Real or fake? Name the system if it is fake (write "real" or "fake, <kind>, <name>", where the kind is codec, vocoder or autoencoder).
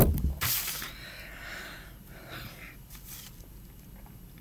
real